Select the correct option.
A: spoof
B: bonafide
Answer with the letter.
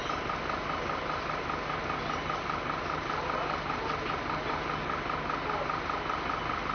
B